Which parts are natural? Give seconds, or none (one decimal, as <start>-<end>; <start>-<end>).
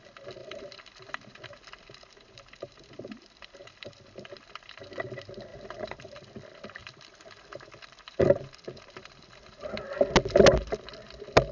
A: 0.0-0.4; 4.8-5.5; 6.2-6.8; 9.7-11.5